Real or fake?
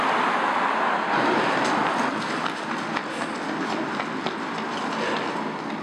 real